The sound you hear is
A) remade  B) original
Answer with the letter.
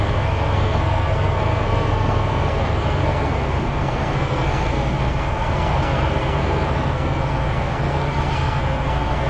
A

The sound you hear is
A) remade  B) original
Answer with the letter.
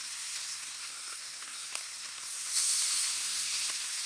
A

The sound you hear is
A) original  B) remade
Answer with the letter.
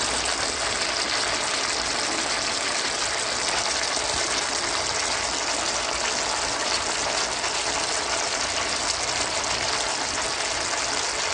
A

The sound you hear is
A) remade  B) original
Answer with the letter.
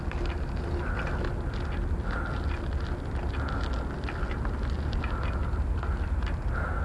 B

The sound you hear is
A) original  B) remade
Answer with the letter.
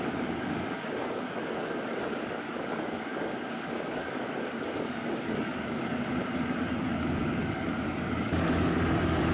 B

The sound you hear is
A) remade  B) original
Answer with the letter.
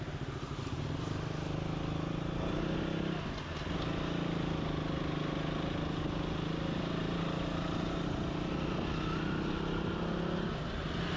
B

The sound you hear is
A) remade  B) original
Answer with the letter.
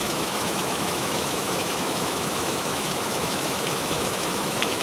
A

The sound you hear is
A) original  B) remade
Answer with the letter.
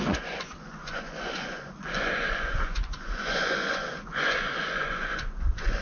B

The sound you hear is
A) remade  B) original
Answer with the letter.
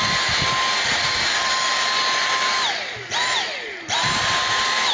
B